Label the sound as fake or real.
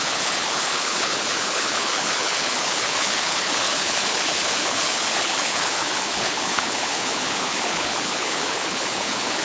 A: fake